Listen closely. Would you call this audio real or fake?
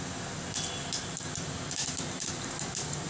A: real